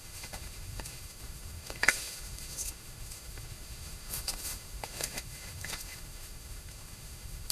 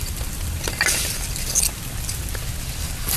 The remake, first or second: first